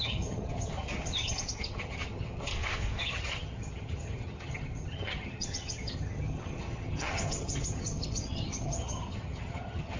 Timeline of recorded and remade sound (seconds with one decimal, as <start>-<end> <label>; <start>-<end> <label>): 0.0-2.5 remade; 2.5-3.0 recorded; 3.0-10.0 remade